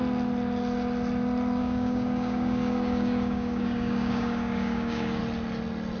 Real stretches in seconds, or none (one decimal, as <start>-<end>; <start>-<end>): 0.0-1.6; 5.2-6.0